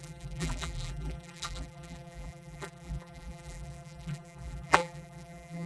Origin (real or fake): fake